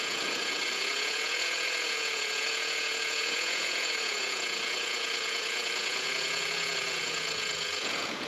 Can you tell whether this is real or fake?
fake